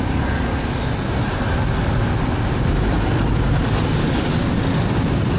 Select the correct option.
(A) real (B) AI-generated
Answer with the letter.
A